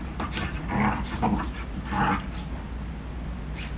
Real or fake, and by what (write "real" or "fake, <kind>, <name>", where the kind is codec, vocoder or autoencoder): real